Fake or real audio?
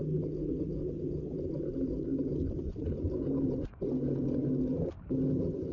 real